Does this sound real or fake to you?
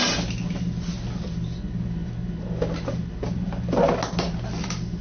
real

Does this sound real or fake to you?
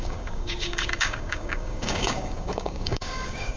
fake